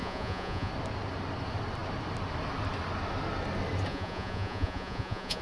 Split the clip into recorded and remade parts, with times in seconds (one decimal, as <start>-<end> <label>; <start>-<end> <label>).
0.0-0.7 remade; 0.7-3.9 recorded; 3.9-5.4 remade

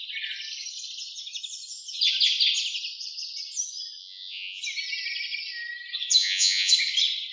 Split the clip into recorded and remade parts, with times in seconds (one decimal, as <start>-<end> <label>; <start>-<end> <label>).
0.0-4.0 recorded; 4.0-4.6 remade; 4.6-6.2 recorded; 6.2-6.7 remade; 6.7-7.3 recorded

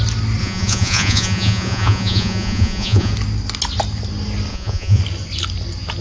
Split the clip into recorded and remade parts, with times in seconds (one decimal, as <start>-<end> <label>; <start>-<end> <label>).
0.0-0.4 recorded; 0.4-3.1 remade; 3.1-4.5 recorded; 4.5-5.0 remade; 5.0-6.0 recorded

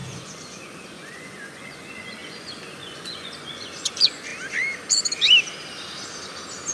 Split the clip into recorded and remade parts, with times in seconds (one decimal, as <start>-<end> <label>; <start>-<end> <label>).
0.0-4.3 remade; 4.3-6.7 recorded

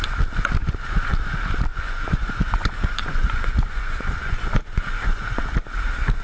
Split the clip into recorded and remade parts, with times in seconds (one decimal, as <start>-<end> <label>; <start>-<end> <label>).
0.0-0.6 recorded; 0.6-1.1 remade; 1.1-1.7 recorded; 1.7-5.4 remade; 5.4-6.2 recorded

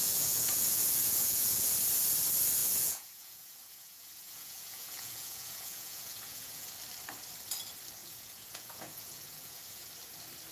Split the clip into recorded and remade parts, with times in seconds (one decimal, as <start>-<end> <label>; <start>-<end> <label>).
0.0-1.7 remade; 1.7-2.6 recorded; 2.6-6.7 remade; 6.7-8.0 recorded; 8.0-9.9 remade; 9.9-10.5 recorded

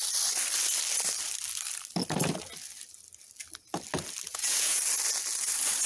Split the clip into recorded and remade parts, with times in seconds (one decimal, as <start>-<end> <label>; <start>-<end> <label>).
0.0-4.3 recorded; 4.3-4.8 remade; 4.8-5.9 recorded